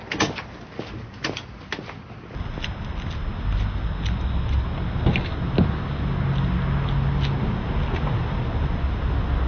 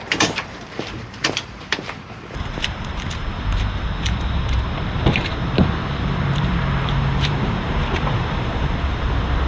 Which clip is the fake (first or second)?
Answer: second